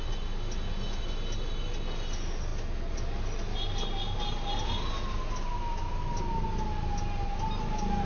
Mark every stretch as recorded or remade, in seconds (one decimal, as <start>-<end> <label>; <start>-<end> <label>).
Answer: 0.0-8.1 recorded